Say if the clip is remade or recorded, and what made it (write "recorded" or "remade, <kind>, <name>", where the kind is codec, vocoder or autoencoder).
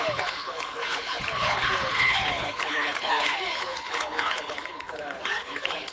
remade, codec, HILCodec